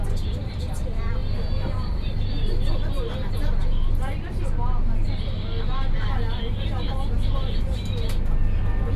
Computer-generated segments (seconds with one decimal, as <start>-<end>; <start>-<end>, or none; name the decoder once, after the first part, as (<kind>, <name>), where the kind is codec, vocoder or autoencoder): none